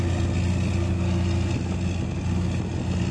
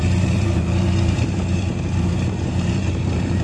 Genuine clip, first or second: first